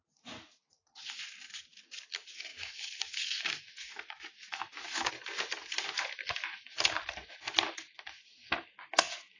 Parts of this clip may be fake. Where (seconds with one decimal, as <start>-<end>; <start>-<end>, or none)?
2.5-5.1; 6.2-6.8